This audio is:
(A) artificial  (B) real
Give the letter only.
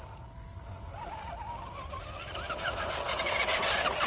B